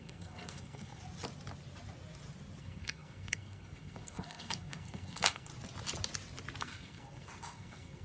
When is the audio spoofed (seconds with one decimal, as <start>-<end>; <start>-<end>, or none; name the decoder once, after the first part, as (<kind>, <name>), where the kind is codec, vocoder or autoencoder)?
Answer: 0.0-1.0 (codec, SNAC); 2.6-5.5; 6.6-8.0